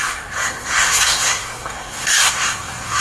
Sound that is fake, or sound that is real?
fake